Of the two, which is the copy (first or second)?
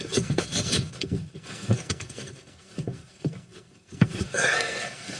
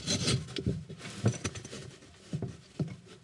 first